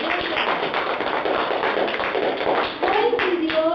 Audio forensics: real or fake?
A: real